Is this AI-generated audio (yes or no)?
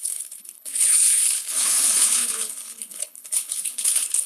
yes